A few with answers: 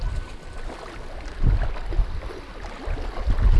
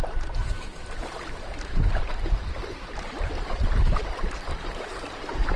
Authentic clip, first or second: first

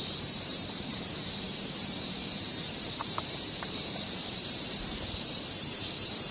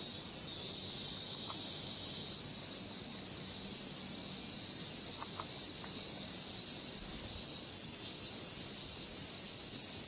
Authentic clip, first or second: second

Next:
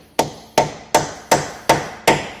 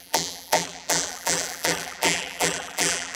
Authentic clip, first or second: first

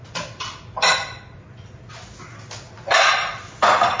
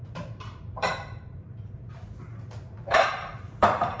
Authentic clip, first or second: first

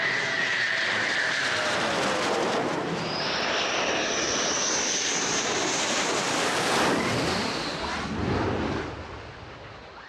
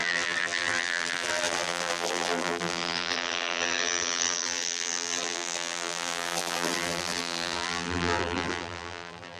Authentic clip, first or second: first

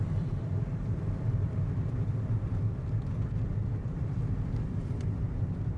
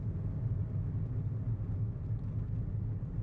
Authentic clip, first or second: second